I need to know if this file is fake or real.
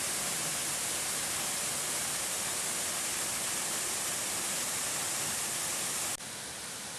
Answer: real